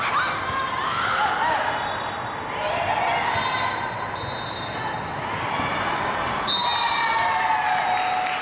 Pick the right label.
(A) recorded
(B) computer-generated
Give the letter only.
A